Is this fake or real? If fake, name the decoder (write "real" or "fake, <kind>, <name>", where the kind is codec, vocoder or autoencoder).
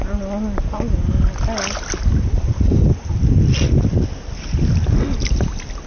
real